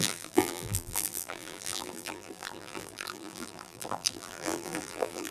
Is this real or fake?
fake